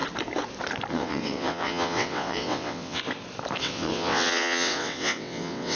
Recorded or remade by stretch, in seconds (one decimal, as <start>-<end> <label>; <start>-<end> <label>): 0.0-0.9 recorded; 0.9-3.0 remade; 3.0-3.6 recorded; 3.6-5.8 remade